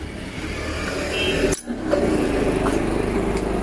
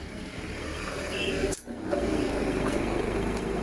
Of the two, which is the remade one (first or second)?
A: second